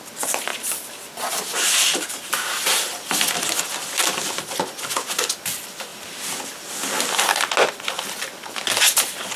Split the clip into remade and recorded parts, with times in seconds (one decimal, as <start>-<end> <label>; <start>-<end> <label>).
0.0-9.4 recorded